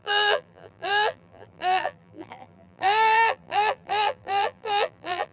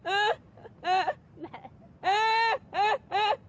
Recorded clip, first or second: second